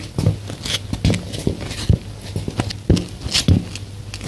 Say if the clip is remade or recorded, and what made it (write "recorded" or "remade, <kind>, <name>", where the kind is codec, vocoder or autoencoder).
recorded